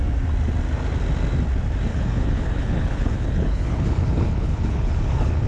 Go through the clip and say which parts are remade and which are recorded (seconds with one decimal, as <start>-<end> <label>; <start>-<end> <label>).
0.0-1.9 recorded; 1.9-5.5 remade